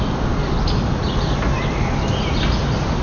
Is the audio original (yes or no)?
yes